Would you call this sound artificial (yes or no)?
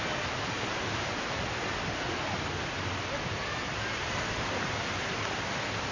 no